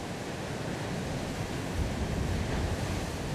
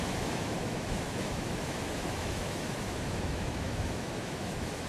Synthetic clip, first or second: second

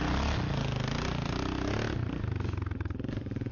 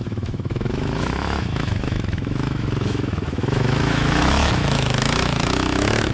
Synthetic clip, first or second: second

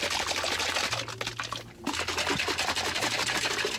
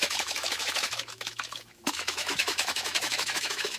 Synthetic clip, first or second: second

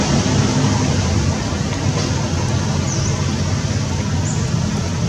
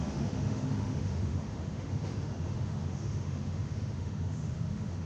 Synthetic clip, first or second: second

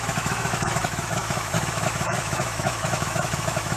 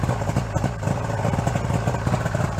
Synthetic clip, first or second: first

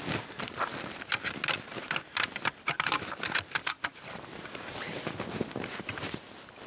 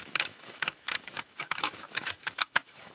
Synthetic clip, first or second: second